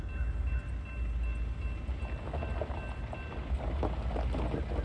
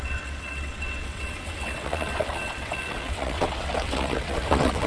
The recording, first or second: first